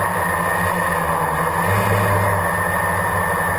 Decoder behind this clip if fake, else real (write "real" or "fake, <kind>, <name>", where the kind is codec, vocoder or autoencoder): real